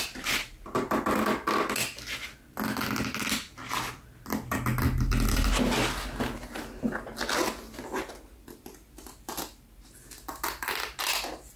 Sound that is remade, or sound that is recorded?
recorded